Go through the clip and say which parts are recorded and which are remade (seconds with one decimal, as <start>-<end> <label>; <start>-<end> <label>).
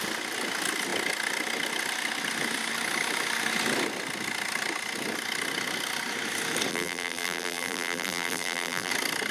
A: 0.0-6.7 recorded; 6.7-8.9 remade; 8.9-9.3 recorded